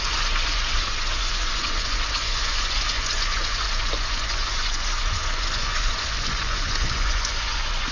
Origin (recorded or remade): remade